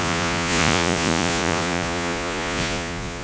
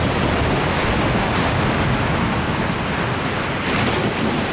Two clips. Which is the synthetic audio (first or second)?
first